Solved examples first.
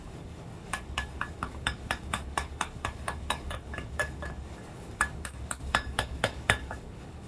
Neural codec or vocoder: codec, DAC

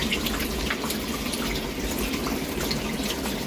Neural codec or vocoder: vocoder, BigVGAN v2